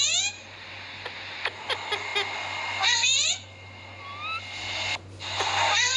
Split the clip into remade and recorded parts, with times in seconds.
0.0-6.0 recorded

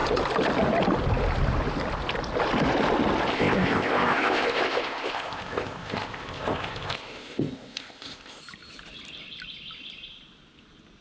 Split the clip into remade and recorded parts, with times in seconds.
0.0-3.3 recorded; 3.3-8.4 remade; 8.4-11.0 recorded